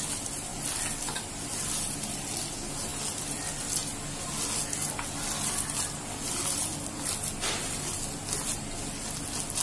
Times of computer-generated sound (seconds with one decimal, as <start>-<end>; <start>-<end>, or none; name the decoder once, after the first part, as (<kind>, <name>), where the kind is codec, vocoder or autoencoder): none